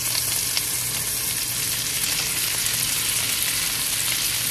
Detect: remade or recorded recorded